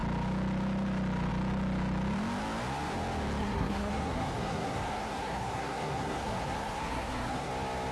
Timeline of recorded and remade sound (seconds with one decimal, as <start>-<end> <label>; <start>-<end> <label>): 0.0-3.4 recorded; 3.4-7.5 remade; 7.5-7.9 recorded